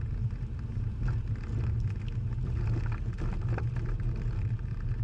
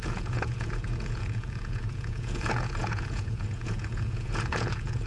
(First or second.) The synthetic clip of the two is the second